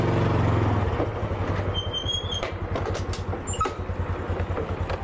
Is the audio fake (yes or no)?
no